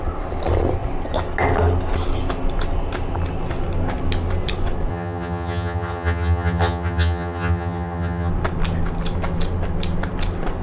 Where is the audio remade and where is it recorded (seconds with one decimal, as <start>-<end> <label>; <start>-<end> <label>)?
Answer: 0.0-4.9 recorded; 4.9-8.3 remade; 8.3-10.6 recorded